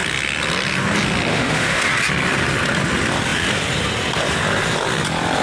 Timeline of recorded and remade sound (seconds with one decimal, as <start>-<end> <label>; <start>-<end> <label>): 0.0-1.3 recorded; 1.3-1.9 remade; 1.9-5.4 recorded